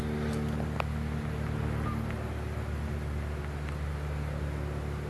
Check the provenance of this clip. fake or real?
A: real